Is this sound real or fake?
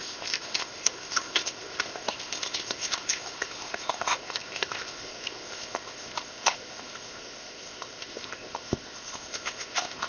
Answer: fake